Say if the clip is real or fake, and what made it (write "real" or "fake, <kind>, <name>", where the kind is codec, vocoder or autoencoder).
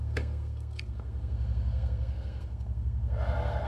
fake, codec, SNAC